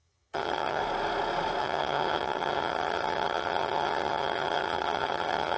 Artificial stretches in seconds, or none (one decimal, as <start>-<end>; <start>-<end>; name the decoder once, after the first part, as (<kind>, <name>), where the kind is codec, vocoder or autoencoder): 0.0-0.8 (vocoder, HiFi-GAN); 1.6-5.6